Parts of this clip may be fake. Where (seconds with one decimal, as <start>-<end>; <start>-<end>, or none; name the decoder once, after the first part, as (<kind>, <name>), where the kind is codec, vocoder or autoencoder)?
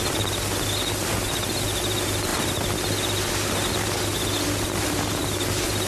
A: none